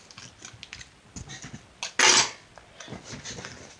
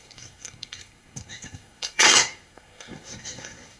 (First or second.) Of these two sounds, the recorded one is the first